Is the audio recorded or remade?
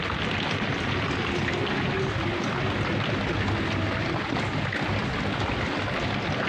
recorded